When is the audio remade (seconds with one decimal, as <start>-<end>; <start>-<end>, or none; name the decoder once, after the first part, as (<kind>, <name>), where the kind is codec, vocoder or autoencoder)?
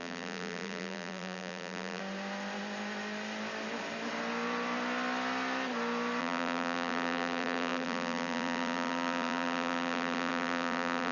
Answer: 0.0-2.0 (vocoder, BigVGAN v2); 6.2-11.1